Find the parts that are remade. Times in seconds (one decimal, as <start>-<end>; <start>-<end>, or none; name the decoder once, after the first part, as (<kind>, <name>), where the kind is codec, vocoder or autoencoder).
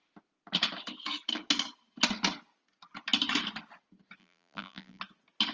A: 4.2-5.0 (vocoder, BigVGAN v2)